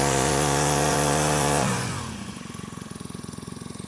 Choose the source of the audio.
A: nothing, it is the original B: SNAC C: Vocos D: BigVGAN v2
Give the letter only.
C